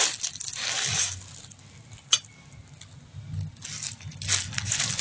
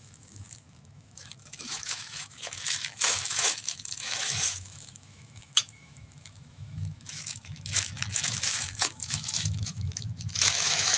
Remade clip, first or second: second